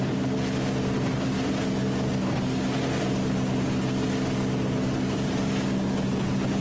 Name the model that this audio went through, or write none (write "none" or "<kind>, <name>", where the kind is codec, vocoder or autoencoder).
none